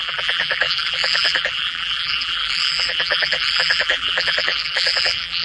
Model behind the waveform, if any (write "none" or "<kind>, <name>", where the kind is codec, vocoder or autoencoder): vocoder, BigVGAN v2